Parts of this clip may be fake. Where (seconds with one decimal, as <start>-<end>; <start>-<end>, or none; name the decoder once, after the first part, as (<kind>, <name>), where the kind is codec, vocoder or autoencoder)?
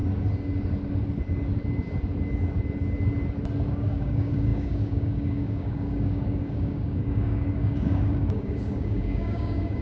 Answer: 3.7-9.8 (codec, DAC)